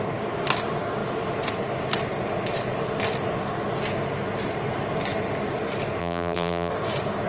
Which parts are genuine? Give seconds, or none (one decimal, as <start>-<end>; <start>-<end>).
0.0-6.0; 6.7-7.3